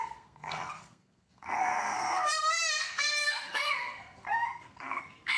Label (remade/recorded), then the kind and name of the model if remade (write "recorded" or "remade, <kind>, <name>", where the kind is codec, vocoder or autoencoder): remade, codec, SNAC